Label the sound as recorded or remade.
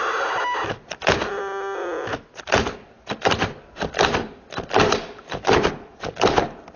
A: recorded